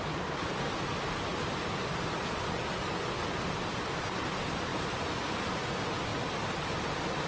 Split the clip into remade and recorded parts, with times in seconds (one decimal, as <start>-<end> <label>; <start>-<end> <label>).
0.0-7.3 recorded